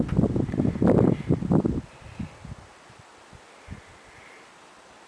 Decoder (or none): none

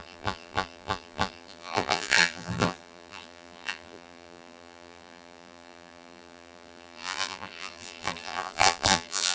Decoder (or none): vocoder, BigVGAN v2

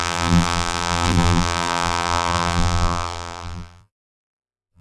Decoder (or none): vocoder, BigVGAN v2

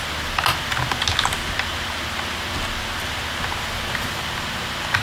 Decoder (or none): none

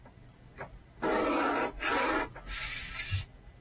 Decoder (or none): none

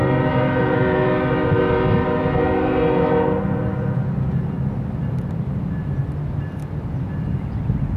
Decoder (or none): none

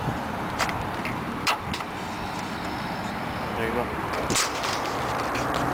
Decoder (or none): vocoder, BigVGAN v2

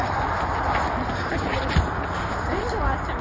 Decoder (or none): none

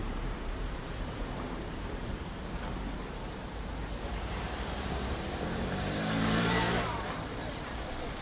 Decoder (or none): vocoder, BigVGAN v2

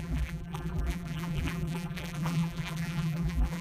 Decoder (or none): vocoder, BigVGAN v2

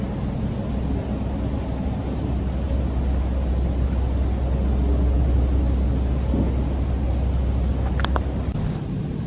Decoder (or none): none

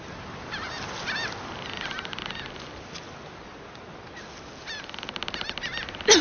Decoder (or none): none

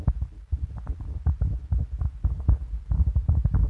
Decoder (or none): vocoder, BigVGAN v2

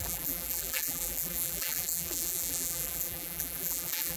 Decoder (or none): vocoder, BigVGAN v2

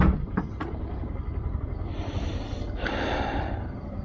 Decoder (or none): vocoder, BigVGAN v2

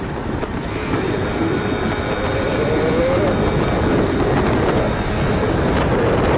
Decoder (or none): none